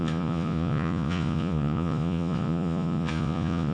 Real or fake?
fake